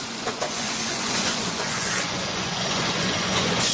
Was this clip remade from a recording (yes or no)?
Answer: yes